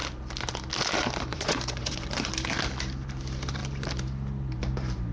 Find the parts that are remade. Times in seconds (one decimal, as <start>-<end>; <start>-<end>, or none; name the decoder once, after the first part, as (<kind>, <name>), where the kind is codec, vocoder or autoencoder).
1.3-2.1 (vocoder, Vocos)